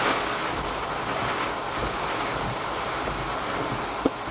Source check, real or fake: real